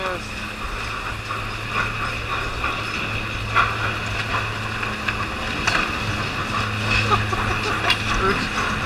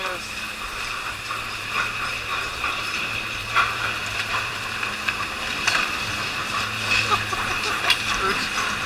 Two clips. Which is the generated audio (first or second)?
second